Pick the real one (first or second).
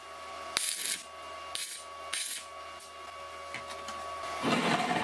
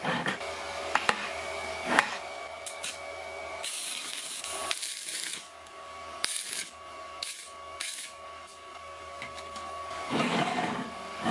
first